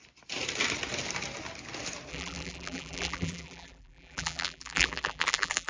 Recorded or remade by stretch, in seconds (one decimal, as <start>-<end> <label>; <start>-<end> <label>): 0.0-2.1 recorded; 2.1-5.7 remade